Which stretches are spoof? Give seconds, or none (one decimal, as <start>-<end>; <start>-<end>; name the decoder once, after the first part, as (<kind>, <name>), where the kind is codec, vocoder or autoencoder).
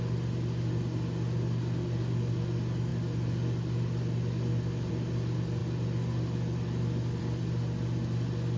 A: none